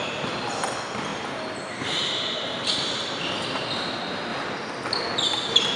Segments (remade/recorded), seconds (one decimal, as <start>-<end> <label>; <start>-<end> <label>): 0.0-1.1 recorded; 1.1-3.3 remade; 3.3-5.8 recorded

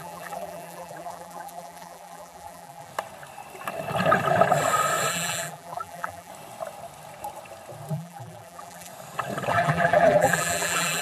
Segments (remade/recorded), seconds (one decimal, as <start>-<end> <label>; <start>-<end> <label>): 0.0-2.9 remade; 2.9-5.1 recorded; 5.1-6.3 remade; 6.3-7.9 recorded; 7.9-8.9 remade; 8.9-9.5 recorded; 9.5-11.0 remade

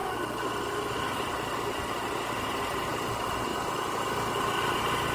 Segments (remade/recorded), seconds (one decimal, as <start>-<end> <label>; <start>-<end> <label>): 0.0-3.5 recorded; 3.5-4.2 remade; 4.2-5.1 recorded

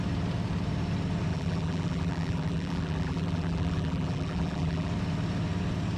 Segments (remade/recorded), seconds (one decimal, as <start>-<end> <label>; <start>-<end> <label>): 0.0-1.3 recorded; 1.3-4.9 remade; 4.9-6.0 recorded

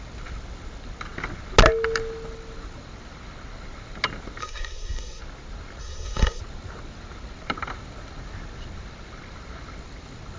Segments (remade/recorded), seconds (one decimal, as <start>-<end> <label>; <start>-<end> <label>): 0.0-4.4 recorded; 4.4-5.2 remade; 5.2-5.8 recorded; 5.8-6.4 remade; 6.4-10.4 recorded

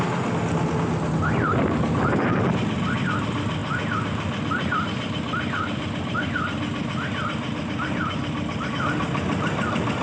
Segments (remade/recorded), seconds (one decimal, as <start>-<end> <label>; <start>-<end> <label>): 0.0-10.0 recorded

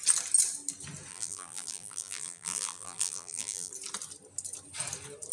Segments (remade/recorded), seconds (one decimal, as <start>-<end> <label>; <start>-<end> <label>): 0.0-1.1 recorded; 1.1-3.7 remade; 3.7-5.3 recorded

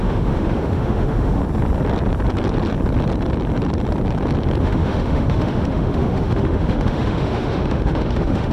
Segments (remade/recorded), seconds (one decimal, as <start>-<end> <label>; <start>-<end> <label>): 0.0-1.4 remade; 1.4-4.6 recorded; 4.6-8.5 remade